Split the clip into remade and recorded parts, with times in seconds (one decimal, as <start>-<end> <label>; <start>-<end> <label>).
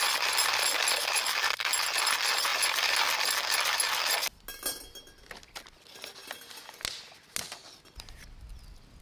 0.0-9.0 recorded